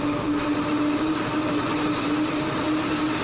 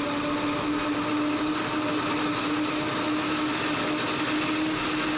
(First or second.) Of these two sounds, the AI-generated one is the first